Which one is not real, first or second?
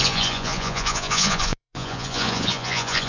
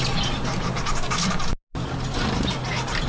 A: first